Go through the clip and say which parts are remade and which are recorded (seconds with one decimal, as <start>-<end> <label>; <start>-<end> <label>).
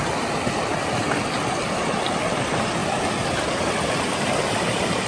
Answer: 0.0-5.1 recorded